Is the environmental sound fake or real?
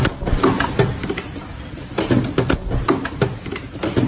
real